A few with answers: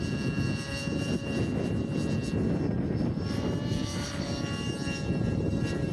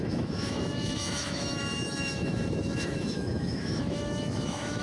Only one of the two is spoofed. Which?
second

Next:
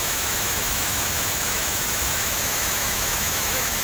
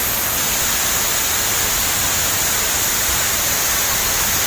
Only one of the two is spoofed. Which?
first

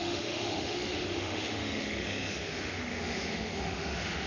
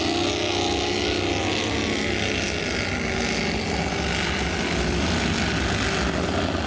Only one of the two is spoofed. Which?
first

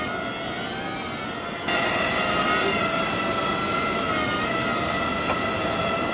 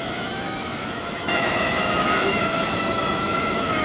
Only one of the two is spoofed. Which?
second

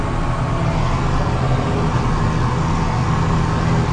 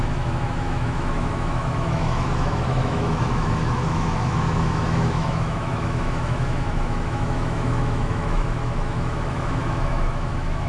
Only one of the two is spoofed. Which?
second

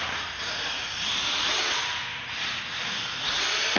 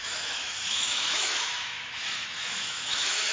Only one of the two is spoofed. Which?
second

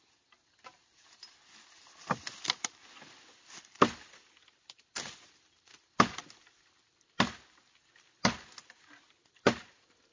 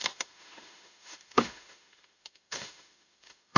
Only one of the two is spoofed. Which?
second